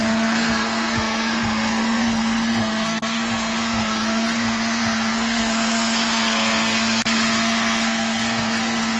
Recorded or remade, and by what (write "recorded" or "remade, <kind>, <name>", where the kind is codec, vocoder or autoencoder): remade, codec, SNAC